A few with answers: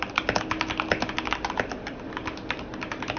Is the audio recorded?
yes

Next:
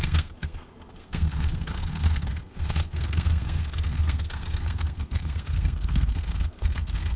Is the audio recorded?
no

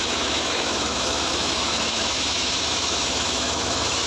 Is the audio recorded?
no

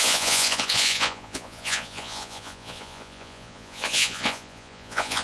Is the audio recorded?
no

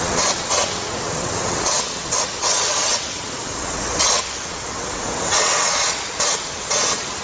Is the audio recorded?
no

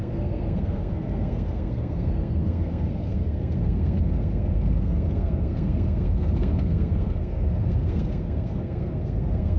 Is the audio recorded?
no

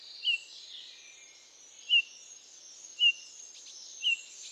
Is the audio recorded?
yes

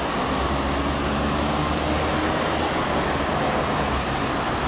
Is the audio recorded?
yes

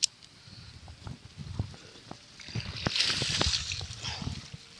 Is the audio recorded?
yes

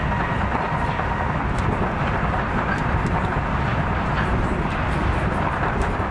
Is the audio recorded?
yes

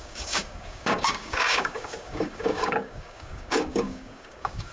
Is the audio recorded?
no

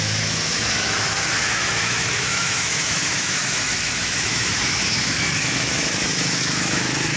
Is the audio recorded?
no